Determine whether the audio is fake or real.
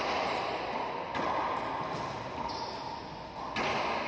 real